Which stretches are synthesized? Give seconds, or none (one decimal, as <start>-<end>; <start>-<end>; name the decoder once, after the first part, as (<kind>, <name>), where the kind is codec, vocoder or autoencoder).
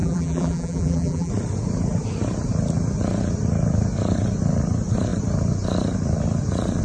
0.0-1.3 (vocoder, BigVGAN v2)